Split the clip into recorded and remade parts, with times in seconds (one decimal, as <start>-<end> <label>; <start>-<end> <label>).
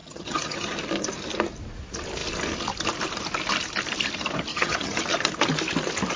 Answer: 0.0-0.7 remade; 0.7-4.5 recorded; 4.5-5.0 remade; 5.0-6.2 recorded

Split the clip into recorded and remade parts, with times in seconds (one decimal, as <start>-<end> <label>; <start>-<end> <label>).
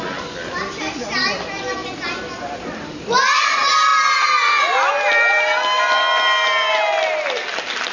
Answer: 0.0-7.9 recorded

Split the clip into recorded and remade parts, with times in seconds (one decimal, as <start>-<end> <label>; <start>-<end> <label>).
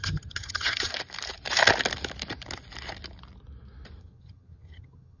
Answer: 0.0-0.9 remade; 0.9-4.0 recorded; 4.0-5.2 remade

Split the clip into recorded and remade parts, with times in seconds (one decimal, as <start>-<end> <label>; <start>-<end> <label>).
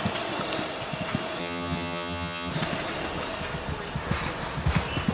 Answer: 0.0-1.4 recorded; 1.4-2.5 remade; 2.5-5.1 recorded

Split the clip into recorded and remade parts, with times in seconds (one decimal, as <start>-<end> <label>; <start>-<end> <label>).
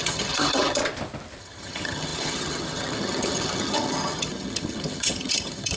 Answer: 0.0-0.8 remade; 0.8-1.4 recorded; 1.4-5.8 remade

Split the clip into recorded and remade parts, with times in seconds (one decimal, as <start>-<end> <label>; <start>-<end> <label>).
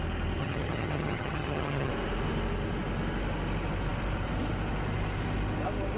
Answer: 0.0-0.4 recorded; 0.4-1.9 remade; 1.9-6.0 recorded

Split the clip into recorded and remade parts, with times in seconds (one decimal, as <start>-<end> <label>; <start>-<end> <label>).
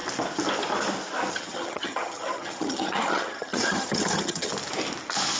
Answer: 0.0-1.3 recorded; 1.3-4.5 remade; 4.5-5.4 recorded